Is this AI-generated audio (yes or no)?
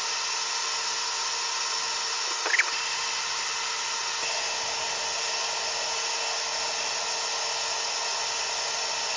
no